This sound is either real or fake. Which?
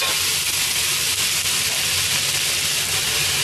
real